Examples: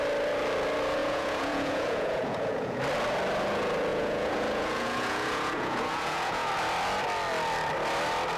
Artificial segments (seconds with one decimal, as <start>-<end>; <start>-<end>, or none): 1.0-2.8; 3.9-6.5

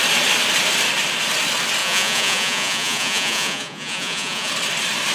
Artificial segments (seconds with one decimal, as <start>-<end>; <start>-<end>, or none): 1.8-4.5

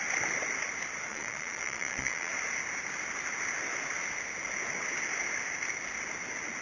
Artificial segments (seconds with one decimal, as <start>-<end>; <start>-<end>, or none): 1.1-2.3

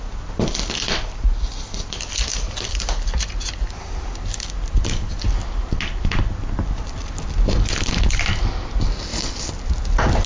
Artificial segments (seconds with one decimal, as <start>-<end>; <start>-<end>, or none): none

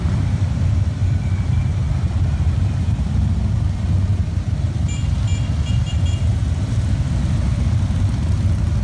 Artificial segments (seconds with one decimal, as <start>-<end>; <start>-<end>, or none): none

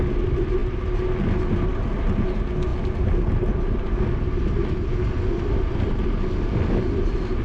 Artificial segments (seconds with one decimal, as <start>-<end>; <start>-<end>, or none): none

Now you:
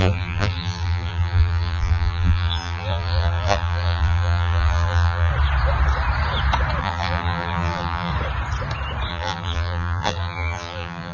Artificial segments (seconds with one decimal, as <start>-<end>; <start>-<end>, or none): 0.0-5.3; 6.8-8.1; 9.1-11.1